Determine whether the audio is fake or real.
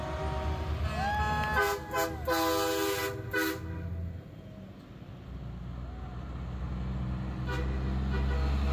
real